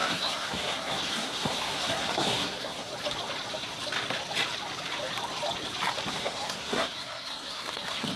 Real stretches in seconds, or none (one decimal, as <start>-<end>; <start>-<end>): 2.9-6.1

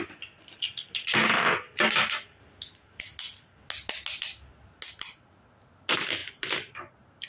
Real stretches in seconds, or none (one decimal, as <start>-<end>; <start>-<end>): 0.0-7.3

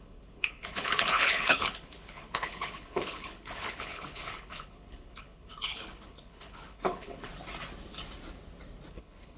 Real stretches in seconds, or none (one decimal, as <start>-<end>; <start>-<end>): 7.3-8.9

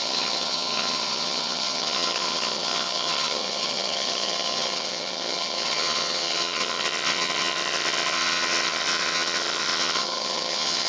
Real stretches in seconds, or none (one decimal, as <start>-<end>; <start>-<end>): none

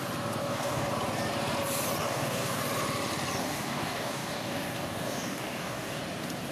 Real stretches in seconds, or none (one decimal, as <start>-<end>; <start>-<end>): 0.0-0.4; 0.9-2.0; 2.6-3.4; 6.0-6.5

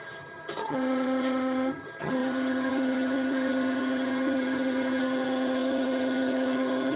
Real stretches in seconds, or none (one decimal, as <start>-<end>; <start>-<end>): none